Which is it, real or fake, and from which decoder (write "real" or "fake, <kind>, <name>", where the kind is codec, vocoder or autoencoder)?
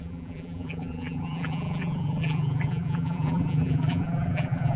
fake, vocoder, BigVGAN v2